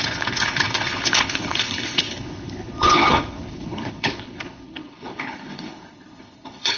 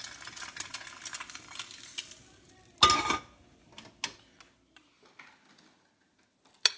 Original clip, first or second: second